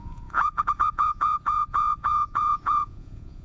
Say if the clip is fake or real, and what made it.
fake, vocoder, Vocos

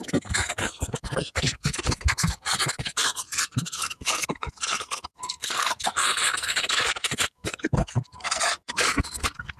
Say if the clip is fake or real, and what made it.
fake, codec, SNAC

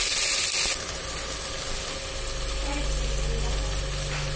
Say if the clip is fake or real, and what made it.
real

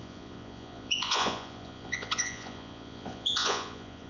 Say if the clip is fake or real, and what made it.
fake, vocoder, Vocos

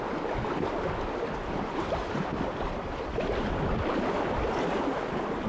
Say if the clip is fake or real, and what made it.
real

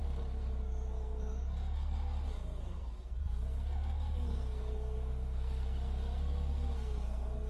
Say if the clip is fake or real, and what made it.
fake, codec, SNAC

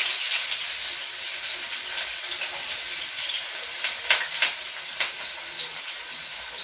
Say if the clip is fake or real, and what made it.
real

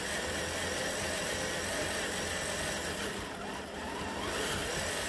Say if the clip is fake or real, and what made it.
real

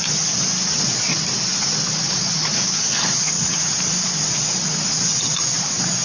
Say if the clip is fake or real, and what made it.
real